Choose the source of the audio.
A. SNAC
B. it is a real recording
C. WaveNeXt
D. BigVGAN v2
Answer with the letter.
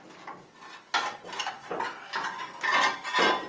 B